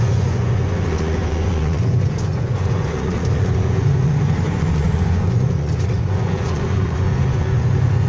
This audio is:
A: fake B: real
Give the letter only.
A